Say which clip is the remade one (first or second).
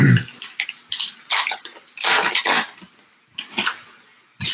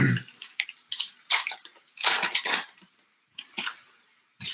second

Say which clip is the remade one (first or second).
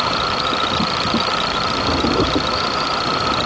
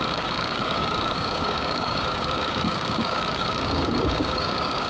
second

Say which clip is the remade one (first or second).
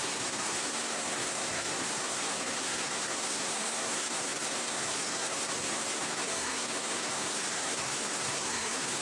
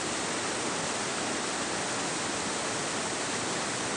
first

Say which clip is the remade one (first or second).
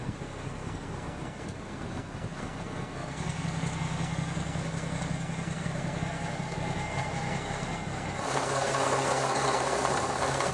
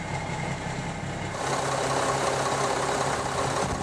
first